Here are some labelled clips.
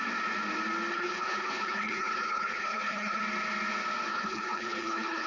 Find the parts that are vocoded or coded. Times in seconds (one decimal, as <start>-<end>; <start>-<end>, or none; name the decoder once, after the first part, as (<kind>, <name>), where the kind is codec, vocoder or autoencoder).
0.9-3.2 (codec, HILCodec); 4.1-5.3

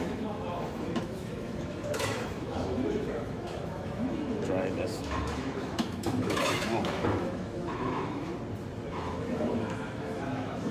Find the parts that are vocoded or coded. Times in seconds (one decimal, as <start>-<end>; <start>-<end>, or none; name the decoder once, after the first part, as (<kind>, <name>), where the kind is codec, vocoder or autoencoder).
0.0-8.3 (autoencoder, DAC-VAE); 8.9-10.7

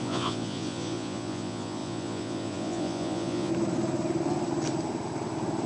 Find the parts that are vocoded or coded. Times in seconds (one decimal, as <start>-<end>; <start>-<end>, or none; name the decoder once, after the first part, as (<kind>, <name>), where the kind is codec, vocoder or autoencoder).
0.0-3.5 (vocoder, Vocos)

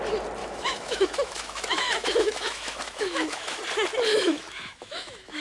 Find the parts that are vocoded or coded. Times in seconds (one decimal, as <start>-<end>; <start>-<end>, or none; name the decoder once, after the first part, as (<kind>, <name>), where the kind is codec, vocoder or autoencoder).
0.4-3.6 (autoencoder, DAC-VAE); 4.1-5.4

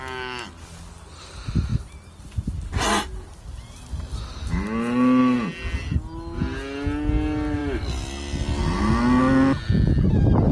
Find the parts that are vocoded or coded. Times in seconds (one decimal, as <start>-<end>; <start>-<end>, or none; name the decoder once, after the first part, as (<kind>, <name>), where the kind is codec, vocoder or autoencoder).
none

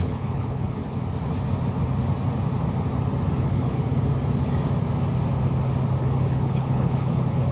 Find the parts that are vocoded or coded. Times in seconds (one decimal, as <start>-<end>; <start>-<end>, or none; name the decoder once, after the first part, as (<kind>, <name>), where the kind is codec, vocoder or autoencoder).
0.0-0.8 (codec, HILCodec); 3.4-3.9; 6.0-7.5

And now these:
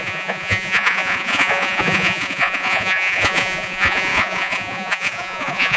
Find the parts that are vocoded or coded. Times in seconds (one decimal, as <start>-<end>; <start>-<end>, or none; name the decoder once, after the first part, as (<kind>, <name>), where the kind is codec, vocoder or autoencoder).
0.0-5.8 (vocoder, Vocos)